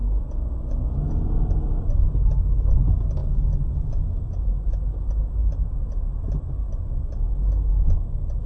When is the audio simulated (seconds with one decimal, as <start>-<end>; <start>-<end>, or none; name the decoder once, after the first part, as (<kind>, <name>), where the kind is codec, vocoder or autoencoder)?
none